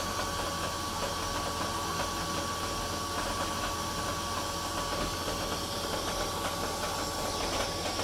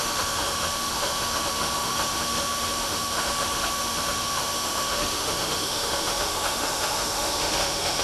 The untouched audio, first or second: first